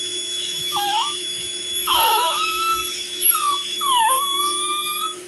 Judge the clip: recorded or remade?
remade